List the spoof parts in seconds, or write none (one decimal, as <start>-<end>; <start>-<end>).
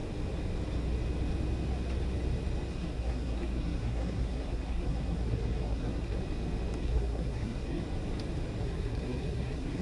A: 2.7-6.2; 6.8-7.8; 8.6-9.8